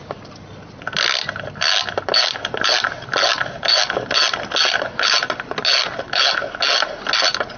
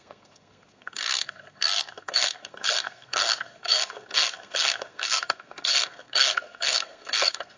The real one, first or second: first